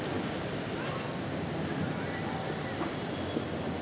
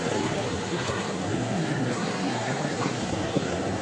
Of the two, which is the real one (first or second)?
first